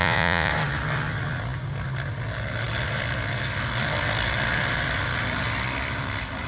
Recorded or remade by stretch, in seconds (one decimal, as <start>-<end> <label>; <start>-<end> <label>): 0.0-0.5 remade; 0.5-6.5 recorded